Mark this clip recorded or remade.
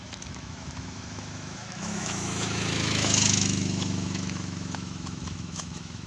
remade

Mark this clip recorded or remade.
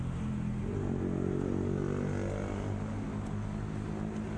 recorded